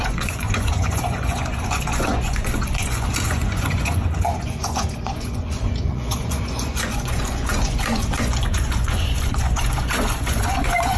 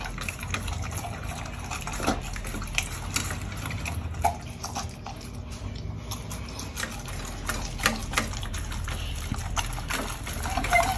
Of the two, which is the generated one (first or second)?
first